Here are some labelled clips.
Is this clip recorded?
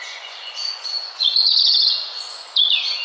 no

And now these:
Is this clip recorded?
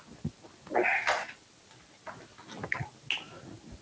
yes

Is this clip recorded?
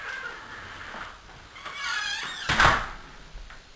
yes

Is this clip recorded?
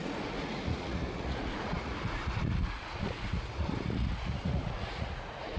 no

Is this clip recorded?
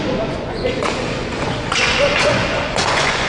no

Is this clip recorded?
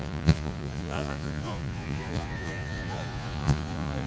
no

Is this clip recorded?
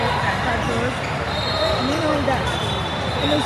yes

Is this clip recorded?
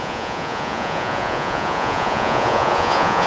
no